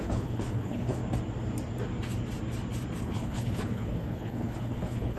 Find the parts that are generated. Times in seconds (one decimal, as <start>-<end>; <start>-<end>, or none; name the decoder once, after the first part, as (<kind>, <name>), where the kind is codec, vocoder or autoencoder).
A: 0.0-1.0 (codec, HILCodec); 3.0-5.2